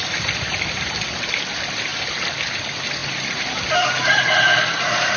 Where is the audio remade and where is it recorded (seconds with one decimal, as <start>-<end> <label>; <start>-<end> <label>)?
0.0-5.2 recorded